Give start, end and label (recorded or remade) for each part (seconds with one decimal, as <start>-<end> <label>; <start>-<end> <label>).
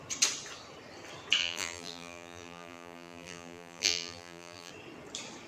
0.0-1.4 recorded; 1.4-4.7 remade; 4.7-5.5 recorded